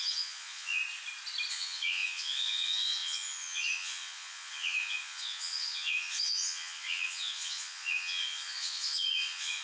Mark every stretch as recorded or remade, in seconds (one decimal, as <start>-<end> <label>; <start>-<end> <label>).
0.0-0.8 remade; 0.8-1.5 recorded; 1.5-9.6 remade